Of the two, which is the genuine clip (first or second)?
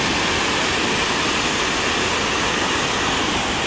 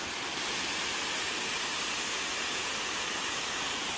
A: first